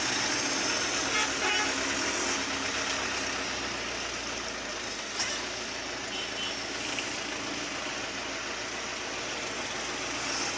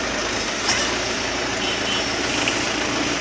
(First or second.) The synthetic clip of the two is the second